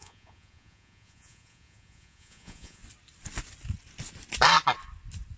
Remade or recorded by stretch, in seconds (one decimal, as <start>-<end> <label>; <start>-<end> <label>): 0.0-2.8 remade; 2.8-5.4 recorded